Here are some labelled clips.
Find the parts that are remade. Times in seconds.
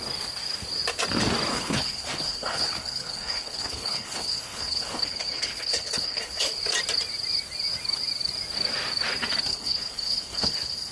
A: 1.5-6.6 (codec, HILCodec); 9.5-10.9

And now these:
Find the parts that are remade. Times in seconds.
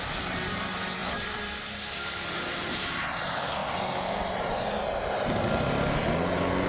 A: 1.0-3.0 (vocoder, BigVGAN v2)